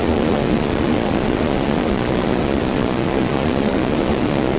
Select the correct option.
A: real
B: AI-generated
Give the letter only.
B